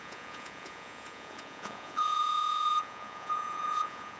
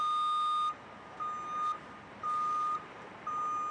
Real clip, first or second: second